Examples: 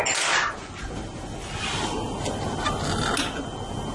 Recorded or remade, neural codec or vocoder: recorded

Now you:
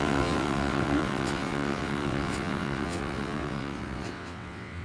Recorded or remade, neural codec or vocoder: remade, vocoder, WaveNeXt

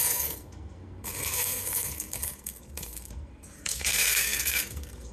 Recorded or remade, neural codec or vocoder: remade, codec, SNAC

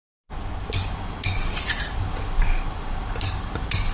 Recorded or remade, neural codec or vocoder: recorded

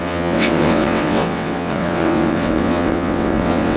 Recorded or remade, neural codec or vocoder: remade, vocoder, WaveNeXt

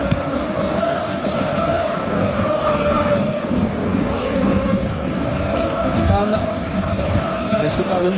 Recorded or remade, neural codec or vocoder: remade, codec, DAC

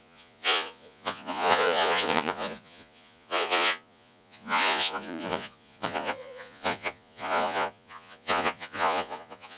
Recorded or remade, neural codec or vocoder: remade, vocoder, Vocos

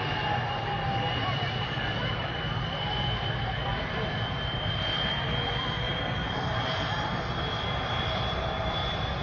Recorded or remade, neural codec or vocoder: remade, vocoder, BigVGAN v2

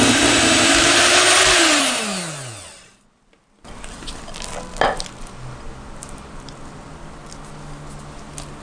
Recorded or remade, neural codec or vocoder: recorded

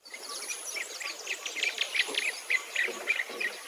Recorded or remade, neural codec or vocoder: remade, vocoder, BigVGAN v2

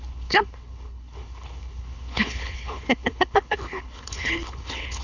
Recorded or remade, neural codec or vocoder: remade, codec, HILCodec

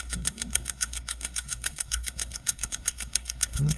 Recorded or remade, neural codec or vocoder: remade, codec, SNAC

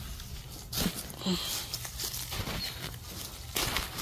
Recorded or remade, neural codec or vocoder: recorded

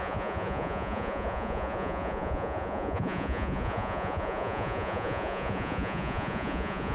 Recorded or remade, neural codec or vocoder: remade, vocoder, Vocos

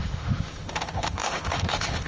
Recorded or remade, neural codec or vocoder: remade, autoencoder, DAC-VAE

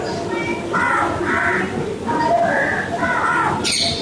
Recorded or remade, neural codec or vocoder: recorded